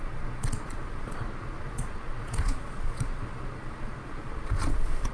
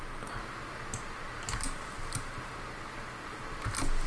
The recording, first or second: second